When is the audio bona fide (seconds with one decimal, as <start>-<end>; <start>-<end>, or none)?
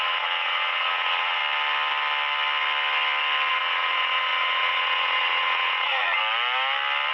1.4-3.5; 6.2-7.1